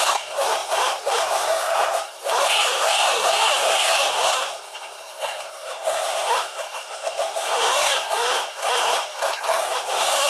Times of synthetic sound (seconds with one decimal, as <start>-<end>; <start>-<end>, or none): 0.0-10.3